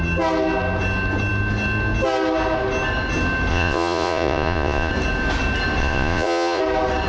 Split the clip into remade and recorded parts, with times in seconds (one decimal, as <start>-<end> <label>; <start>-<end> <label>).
0.0-3.5 recorded; 3.5-4.9 remade; 4.9-5.8 recorded; 5.8-6.6 remade; 6.6-7.1 recorded